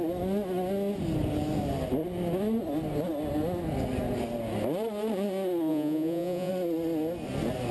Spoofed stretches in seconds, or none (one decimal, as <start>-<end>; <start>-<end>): 5.7-6.5